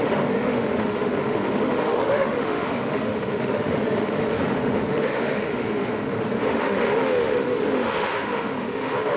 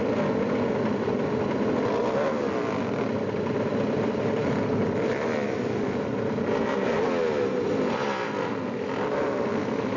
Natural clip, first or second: second